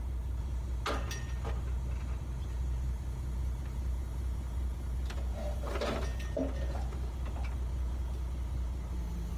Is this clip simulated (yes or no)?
no